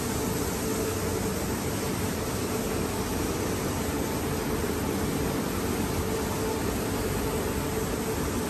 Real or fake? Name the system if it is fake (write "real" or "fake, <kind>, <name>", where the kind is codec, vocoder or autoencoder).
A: real